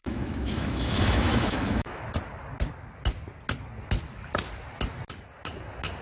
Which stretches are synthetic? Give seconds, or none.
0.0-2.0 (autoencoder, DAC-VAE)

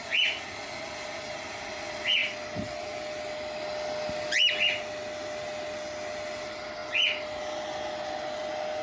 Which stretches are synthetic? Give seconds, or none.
none

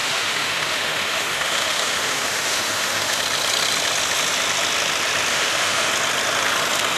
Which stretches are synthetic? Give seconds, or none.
0.0-3.2 (autoencoder, DAC-VAE); 5.3-5.9